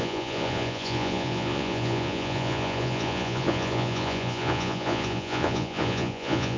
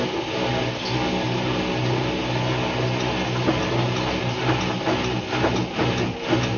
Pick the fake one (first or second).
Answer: first